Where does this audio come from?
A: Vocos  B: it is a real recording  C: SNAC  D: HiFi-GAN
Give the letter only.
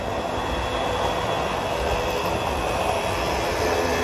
B